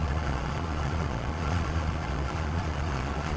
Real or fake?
fake